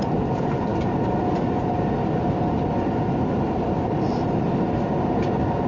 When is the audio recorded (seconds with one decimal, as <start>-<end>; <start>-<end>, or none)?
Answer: 0.0-5.7